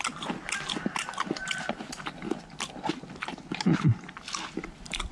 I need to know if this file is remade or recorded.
recorded